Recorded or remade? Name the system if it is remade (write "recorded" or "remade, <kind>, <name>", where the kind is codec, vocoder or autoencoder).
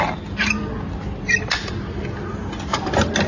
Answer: recorded